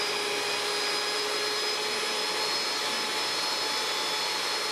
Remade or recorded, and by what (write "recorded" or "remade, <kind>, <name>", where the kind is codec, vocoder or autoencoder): recorded